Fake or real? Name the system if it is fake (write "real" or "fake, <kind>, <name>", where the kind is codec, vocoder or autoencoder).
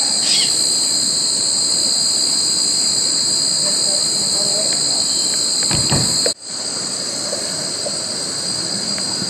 real